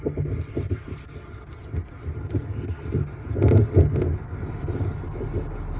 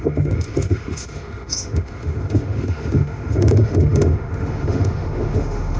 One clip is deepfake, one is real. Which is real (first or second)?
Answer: first